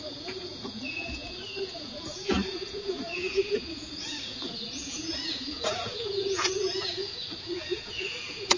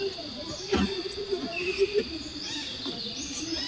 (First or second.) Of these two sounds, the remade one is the first